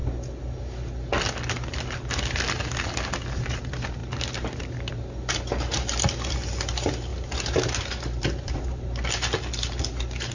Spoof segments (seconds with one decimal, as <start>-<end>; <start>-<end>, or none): 4.0-4.9; 7.1-9.0